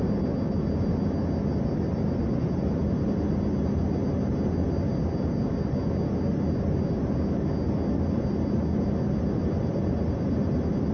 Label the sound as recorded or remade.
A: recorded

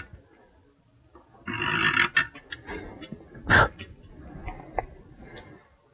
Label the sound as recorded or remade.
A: recorded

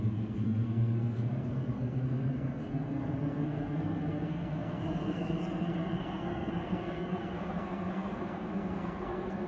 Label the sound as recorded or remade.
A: remade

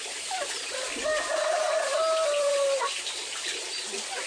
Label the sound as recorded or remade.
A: recorded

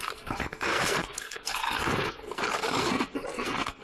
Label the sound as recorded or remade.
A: remade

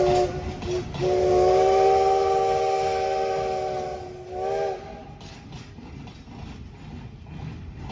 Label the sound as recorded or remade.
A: recorded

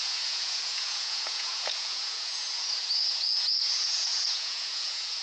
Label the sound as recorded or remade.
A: remade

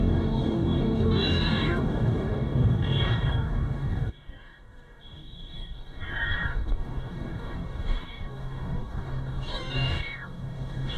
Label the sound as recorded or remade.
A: remade